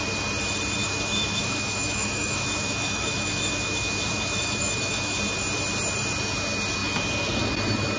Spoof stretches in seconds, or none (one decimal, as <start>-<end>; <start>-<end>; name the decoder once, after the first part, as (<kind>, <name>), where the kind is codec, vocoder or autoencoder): 0.8-5.2 (autoencoder, DAC-VAE)